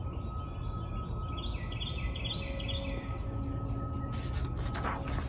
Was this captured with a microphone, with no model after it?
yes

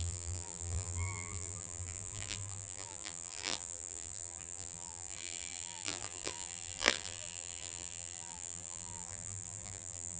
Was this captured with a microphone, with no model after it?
no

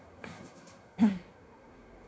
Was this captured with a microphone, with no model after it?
no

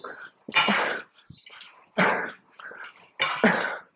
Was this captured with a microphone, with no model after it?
yes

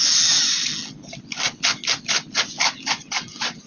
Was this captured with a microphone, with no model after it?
yes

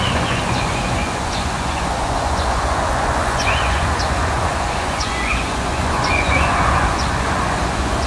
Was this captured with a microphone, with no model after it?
no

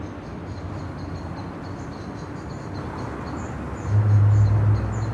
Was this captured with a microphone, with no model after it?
yes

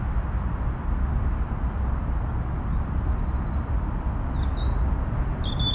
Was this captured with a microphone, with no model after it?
yes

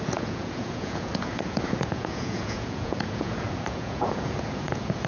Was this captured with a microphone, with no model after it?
no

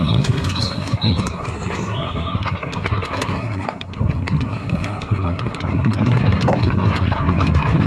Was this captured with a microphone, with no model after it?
no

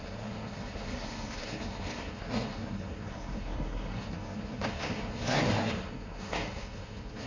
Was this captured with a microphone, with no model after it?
no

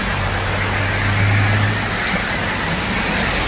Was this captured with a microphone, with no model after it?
yes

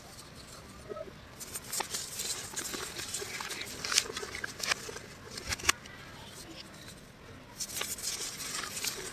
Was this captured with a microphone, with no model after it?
yes